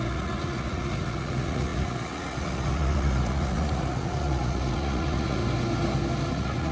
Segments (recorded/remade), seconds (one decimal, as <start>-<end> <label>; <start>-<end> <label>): 0.0-5.4 remade; 5.4-6.3 recorded; 6.3-6.7 remade